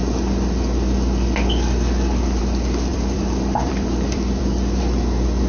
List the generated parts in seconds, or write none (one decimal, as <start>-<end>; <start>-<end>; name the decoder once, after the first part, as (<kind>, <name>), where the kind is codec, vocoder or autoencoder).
2.9-4.8 (vocoder, BigVGAN v2)